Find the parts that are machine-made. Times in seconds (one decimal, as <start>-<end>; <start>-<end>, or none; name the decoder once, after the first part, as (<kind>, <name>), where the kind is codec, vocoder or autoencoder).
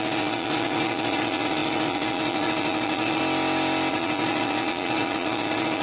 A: 0.0-3.2 (vocoder, Vocos); 3.9-5.8